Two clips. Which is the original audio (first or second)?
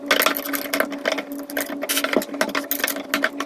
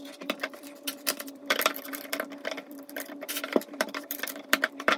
first